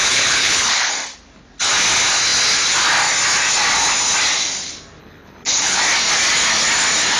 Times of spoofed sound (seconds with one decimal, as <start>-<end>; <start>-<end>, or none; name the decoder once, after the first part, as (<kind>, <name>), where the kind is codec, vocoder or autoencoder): 0.0-0.9 (codec, HILCodec); 5.0-5.8